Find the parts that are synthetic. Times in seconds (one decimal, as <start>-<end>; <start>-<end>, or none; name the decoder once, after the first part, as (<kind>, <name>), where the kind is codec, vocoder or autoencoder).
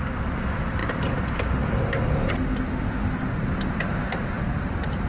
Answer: 0.8-1.9 (vocoder, BigVGAN v2)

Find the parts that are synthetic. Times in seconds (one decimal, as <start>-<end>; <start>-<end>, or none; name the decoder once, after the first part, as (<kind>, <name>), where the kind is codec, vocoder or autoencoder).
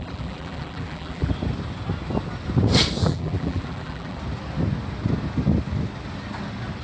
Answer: 0.0-1.3 (vocoder, BigVGAN v2); 3.0-4.2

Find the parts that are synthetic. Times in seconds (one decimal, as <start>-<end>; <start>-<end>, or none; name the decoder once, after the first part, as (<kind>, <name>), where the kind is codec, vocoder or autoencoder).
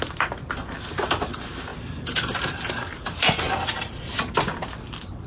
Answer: 1.7-4.3 (vocoder, BigVGAN v2)